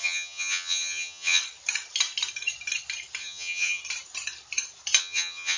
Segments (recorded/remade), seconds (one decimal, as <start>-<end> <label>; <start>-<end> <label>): 0.0-1.4 remade; 1.4-3.2 recorded; 3.2-3.8 remade; 3.8-5.0 recorded; 5.0-5.6 remade